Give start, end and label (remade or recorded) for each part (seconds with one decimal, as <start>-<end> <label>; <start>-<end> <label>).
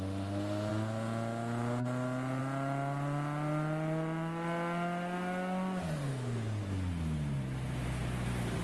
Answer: 0.0-8.6 recorded